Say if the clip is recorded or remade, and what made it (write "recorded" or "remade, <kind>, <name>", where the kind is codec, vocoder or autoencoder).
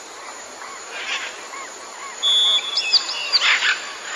recorded